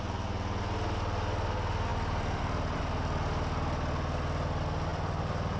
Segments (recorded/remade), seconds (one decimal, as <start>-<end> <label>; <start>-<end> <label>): 0.0-1.9 recorded; 1.9-2.8 remade; 2.8-4.9 recorded; 4.9-5.6 remade

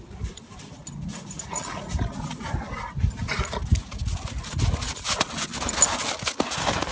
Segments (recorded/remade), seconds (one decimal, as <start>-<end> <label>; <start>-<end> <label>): 0.0-6.9 recorded

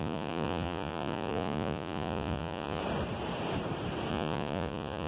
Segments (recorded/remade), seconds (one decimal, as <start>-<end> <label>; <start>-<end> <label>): 0.0-2.8 remade; 2.8-4.1 recorded; 4.1-5.1 remade

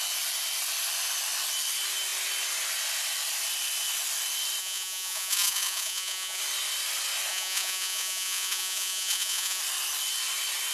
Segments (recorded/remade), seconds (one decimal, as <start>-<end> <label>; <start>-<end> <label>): 0.0-4.6 recorded; 4.6-6.4 remade; 6.4-7.3 recorded; 7.3-9.6 remade; 9.6-10.7 recorded

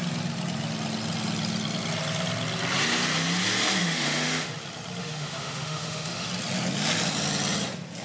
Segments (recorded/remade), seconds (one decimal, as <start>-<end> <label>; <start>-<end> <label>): 0.0-3.8 recorded; 3.8-4.5 remade; 4.5-5.0 recorded; 5.0-6.3 remade; 6.3-8.0 recorded

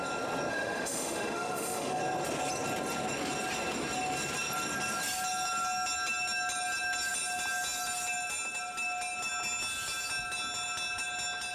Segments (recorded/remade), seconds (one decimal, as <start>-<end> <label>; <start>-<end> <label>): 0.0-0.5 recorded; 0.5-2.0 remade; 2.0-11.5 recorded